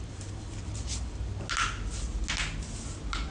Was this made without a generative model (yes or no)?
yes